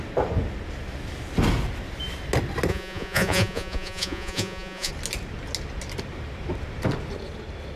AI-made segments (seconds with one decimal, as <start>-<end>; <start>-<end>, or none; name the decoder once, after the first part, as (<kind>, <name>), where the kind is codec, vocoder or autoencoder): 2.7-4.9 (vocoder, Vocos)